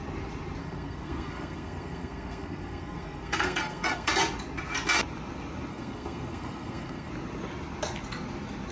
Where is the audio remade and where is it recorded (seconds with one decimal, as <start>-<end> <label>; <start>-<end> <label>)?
0.0-0.6 recorded; 0.6-4.1 remade; 4.1-5.7 recorded; 5.7-7.1 remade; 7.1-8.7 recorded